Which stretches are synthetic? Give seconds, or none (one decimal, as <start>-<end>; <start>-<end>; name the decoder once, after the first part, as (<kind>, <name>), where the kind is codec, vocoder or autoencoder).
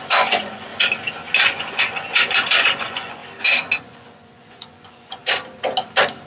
0.0-0.7 (vocoder, Vocos); 1.4-3.2; 3.8-5.2